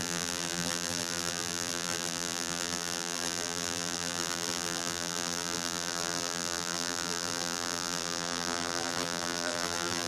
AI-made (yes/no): yes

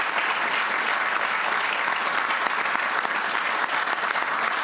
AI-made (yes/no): no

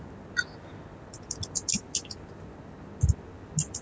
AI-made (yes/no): no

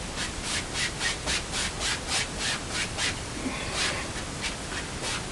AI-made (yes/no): no